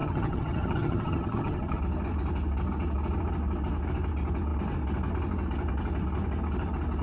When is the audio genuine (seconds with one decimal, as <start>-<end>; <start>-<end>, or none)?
1.8-7.0